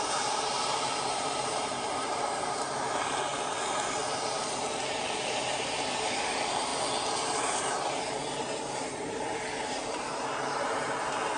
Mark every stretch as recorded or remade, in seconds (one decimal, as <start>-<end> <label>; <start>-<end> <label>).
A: 0.0-3.3 remade; 3.3-4.1 recorded; 4.1-6.7 remade; 6.7-7.4 recorded; 7.4-11.4 remade